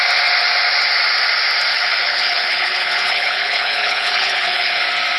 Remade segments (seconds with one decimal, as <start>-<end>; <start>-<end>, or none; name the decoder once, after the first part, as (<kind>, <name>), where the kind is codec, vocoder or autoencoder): 1.7-4.8 (codec, HILCodec)